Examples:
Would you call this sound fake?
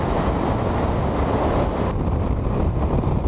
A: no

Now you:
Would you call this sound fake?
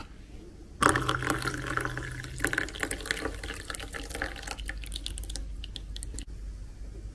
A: no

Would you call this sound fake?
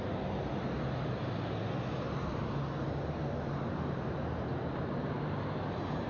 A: no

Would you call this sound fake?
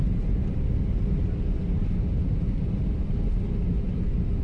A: no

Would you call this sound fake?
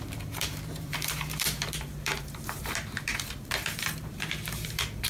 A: yes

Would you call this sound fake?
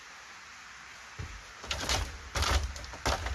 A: no